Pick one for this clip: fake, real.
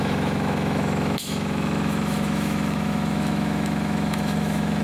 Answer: fake